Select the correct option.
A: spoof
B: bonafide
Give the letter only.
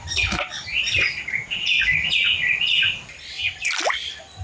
B